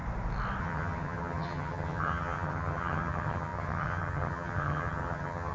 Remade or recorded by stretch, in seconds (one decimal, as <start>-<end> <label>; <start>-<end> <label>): 0.0-0.6 recorded; 0.6-5.5 remade